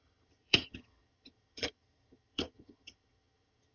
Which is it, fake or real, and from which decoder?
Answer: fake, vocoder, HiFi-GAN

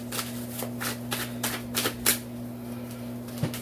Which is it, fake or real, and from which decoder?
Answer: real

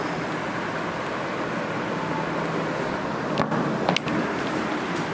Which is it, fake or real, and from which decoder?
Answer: real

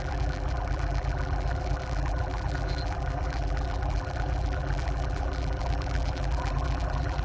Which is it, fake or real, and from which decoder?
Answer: fake, vocoder, BigVGAN v2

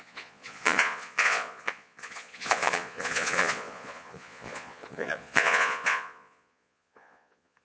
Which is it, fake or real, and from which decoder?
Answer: fake, vocoder, Vocos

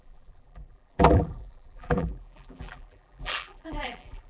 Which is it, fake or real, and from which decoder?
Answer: fake, vocoder, BigVGAN v2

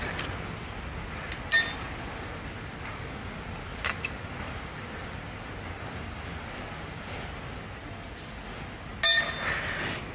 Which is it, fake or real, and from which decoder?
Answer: real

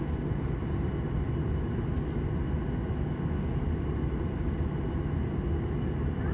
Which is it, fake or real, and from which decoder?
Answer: real